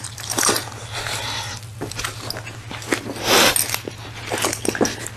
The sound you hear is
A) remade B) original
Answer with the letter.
B